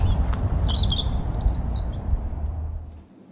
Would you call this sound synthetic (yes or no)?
no